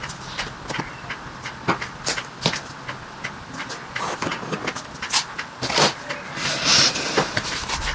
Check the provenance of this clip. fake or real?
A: real